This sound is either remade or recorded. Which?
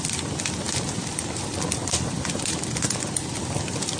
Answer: remade